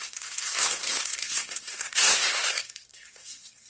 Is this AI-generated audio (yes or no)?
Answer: yes